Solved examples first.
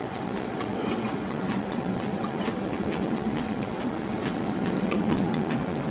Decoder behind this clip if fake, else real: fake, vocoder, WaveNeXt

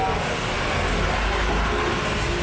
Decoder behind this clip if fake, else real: real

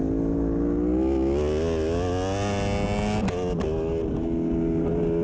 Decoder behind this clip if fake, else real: real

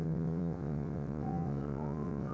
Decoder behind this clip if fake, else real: fake, vocoder, WaveNeXt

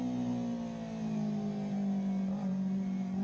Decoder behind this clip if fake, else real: real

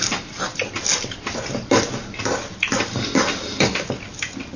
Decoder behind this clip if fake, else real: real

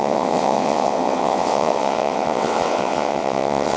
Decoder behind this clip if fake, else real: fake, vocoder, WaveNeXt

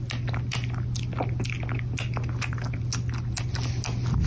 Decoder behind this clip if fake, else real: real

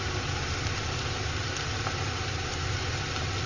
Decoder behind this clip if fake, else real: real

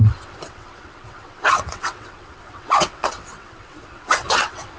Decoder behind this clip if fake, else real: fake, vocoder, WaveNeXt